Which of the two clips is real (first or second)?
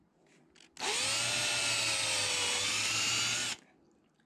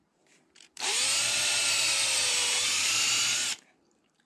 first